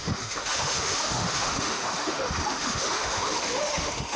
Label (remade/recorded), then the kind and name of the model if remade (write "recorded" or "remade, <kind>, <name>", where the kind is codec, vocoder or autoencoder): remade, autoencoder, DAC-VAE